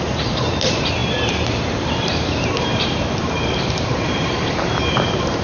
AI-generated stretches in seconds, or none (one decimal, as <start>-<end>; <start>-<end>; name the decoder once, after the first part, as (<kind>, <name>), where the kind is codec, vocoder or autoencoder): 0.0-5.4 (vocoder, BigVGAN v2)